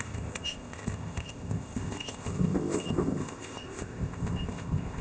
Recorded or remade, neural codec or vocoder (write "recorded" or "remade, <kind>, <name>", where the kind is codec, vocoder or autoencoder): remade, codec, ZipCodec